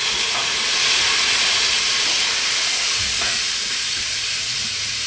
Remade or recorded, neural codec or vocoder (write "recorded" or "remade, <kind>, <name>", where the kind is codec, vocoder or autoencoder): remade, vocoder, Vocos